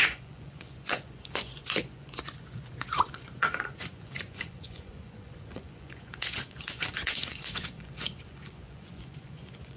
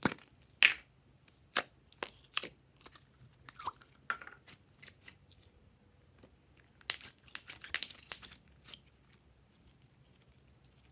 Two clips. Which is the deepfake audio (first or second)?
first